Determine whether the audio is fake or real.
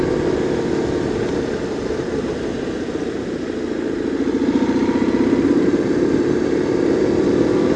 real